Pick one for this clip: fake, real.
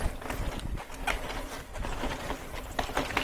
real